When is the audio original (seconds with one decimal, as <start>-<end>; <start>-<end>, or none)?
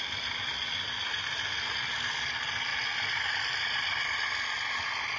0.0-5.2